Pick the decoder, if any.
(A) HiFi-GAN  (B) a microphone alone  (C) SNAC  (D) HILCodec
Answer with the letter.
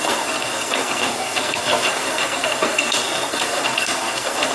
C